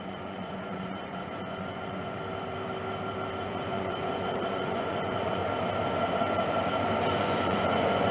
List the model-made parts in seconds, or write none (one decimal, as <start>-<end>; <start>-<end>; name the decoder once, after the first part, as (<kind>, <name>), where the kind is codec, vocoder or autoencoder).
0.0-2.2 (vocoder, Vocos); 3.4-5.4; 7.1-8.1